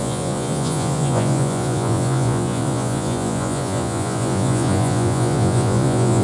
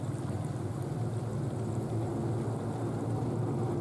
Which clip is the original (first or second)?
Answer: second